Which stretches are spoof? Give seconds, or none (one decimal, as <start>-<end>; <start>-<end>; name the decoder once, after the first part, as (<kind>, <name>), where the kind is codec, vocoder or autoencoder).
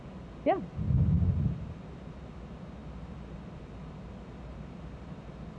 none